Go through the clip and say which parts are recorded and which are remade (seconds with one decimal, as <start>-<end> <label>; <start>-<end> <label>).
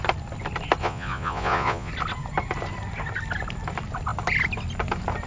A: 0.0-0.8 recorded; 0.8-1.9 remade; 1.9-5.3 recorded